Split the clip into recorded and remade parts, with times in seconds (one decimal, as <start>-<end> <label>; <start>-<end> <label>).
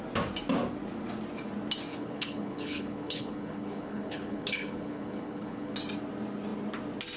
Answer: 0.0-1.9 recorded; 1.9-5.7 remade; 5.7-7.2 recorded